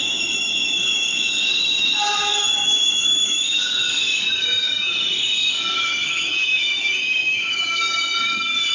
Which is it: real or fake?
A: fake